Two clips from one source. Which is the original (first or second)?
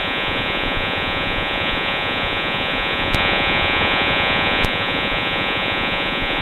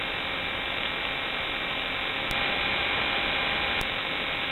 second